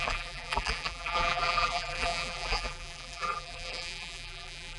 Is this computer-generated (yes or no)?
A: yes